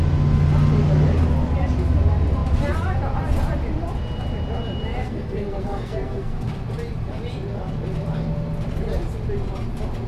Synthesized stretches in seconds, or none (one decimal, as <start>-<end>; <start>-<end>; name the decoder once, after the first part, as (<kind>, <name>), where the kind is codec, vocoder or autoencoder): 5.0-6.5 (codec, SNAC)